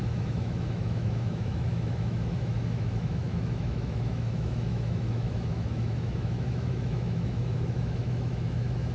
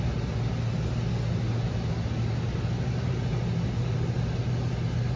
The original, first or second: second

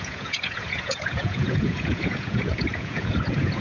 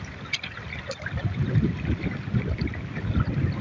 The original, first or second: second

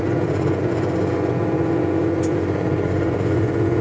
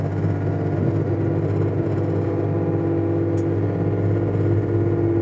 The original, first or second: second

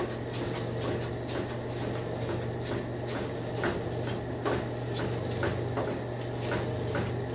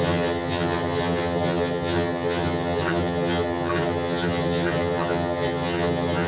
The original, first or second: first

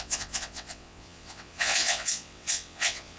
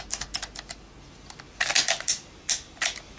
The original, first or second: second